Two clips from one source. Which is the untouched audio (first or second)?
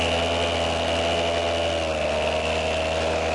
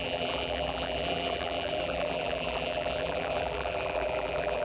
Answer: first